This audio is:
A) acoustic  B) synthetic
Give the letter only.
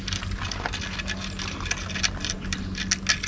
A